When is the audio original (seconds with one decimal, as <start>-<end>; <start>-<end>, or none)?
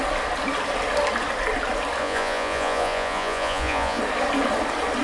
0.0-2.0; 4.0-5.0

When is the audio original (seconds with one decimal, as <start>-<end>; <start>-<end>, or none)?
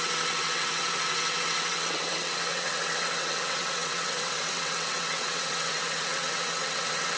none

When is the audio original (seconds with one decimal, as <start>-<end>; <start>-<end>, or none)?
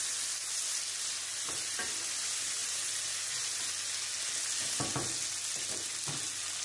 0.0-2.6; 3.6-6.6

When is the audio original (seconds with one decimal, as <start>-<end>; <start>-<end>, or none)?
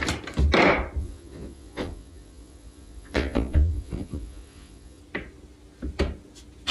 0.0-1.0; 5.0-6.7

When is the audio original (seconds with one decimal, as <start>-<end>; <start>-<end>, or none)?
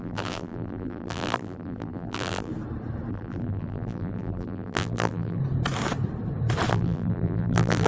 2.5-3.1; 5.4-6.7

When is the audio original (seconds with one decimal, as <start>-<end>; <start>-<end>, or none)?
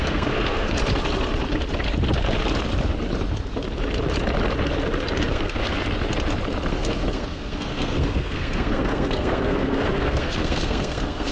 0.8-5.3; 5.7-6.7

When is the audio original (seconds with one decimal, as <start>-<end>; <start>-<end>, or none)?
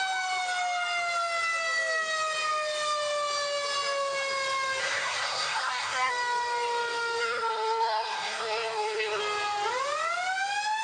0.0-4.8; 6.1-7.2; 9.2-10.8